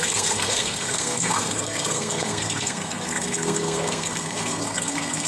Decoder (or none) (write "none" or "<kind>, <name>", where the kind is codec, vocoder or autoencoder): codec, SNAC